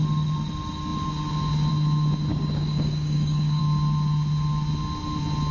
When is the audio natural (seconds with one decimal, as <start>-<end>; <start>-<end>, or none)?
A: 0.0-2.3; 3.6-5.5